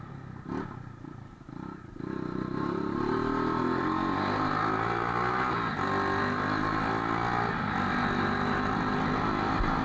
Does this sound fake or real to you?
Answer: real